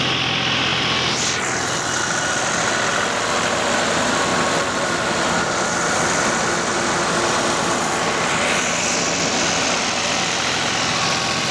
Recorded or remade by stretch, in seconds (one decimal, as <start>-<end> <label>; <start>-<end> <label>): 0.0-11.5 recorded